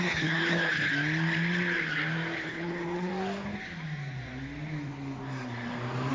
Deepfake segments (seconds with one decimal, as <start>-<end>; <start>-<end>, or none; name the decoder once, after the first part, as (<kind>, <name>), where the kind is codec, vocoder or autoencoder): 0.0-0.9 (codec, HILCodec); 2.4-3.1